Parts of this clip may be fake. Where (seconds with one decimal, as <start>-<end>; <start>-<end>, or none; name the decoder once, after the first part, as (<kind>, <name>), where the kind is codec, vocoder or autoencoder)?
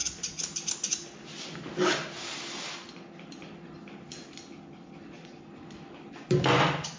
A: none